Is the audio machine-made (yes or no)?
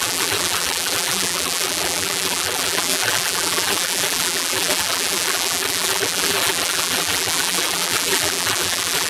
yes